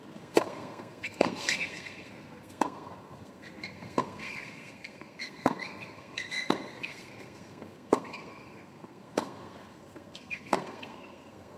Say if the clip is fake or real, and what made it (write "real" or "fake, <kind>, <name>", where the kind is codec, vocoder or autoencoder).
fake, codec, SNAC